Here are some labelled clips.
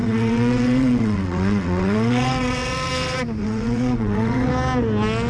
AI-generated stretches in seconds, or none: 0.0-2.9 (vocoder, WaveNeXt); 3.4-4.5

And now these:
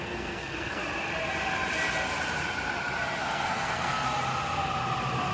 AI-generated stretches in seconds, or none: 0.0-0.8 (codec, SNAC); 3.2-4.1

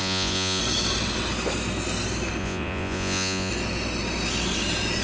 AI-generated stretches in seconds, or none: 0.0-0.6 (vocoder, Vocos); 2.4-3.5

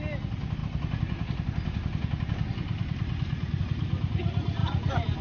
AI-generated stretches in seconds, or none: none

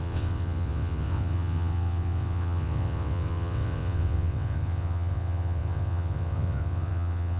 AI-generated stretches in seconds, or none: 0.0-7.4 (vocoder, WaveNeXt)